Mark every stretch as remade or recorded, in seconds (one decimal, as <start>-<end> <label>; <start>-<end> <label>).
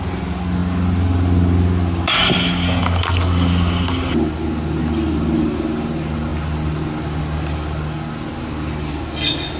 0.0-9.6 recorded